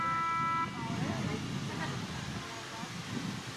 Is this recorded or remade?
recorded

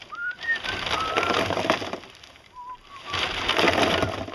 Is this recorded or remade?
remade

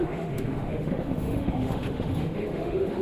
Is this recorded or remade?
remade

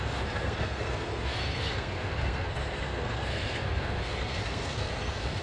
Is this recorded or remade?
remade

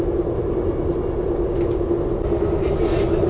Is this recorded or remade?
recorded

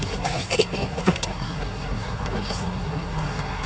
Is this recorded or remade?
remade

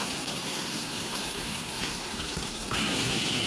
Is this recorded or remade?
remade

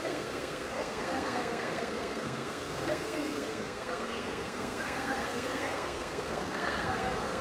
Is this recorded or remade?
remade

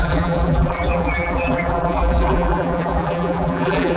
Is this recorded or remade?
remade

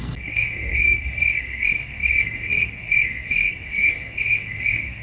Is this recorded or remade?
remade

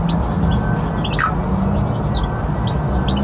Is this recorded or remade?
recorded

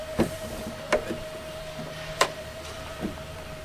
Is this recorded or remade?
remade